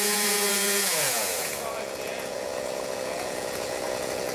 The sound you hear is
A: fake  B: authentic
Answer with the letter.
A